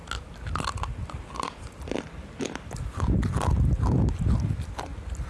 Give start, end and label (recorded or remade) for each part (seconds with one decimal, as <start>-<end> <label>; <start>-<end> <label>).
0.0-5.3 recorded